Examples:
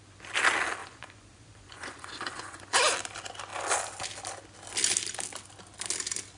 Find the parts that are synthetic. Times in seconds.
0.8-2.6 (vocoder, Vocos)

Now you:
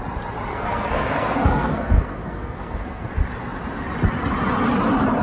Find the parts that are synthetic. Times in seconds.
0.5-3.1 (codec, SNAC)

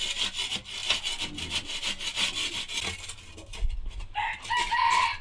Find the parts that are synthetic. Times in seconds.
none

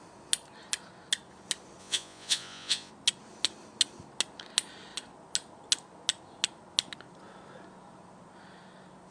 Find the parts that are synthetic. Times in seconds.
1.8-2.9 (vocoder, Vocos)